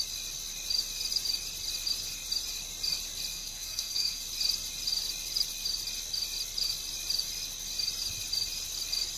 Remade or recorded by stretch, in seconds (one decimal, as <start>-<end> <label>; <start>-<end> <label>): 0.0-3.3 recorded; 3.3-4.2 remade; 4.2-9.2 recorded